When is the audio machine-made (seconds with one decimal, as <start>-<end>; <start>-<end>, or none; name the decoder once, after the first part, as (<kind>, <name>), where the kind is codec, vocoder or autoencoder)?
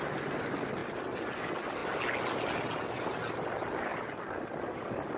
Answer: none